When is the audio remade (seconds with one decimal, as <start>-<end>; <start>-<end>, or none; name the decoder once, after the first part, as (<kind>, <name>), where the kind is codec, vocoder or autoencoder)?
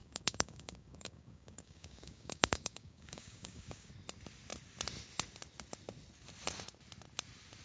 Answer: 0.0-3.9 (codec, DAC)